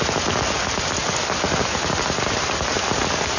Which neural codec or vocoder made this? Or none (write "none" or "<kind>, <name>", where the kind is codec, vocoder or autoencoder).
none